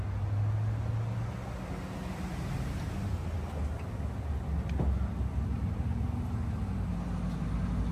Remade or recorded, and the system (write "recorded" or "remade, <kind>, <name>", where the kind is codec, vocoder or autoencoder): recorded